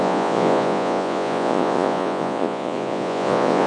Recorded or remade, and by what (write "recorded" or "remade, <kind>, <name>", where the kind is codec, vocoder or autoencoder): remade, vocoder, Vocos